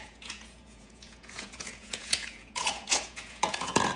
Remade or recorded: remade